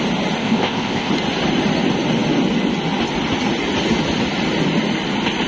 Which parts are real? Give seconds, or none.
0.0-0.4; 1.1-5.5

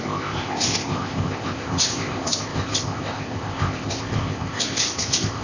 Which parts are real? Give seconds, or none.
none

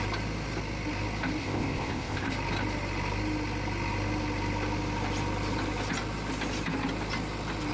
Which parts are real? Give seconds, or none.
0.0-1.4; 2.3-7.7

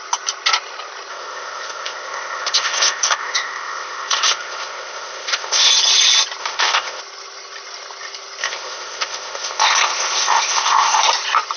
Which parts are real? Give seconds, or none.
0.0-1.1; 5.7-6.4; 7.0-8.4; 11.0-11.6

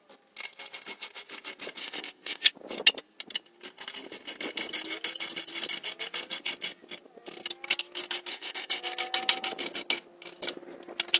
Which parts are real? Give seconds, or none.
0.0-1.8; 2.5-8.3; 8.8-11.2

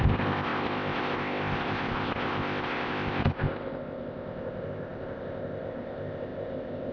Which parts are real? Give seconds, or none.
none